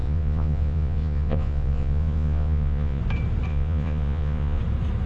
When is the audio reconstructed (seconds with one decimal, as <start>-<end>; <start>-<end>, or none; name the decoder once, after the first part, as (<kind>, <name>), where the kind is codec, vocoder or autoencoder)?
0.0-3.0 (vocoder, Vocos); 3.5-4.6